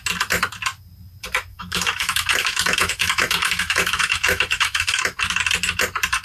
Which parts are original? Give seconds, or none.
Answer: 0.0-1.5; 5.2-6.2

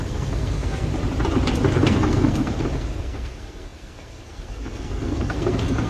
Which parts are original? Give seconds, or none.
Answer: 0.9-1.7

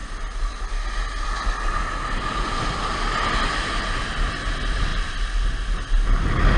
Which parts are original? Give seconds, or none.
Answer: 0.0-6.6

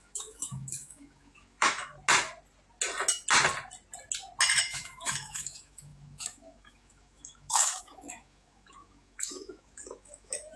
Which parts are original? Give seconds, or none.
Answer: 1.9-4.6

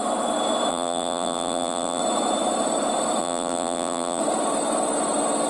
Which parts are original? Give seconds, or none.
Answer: 0.0-0.7; 2.0-3.2; 4.2-5.5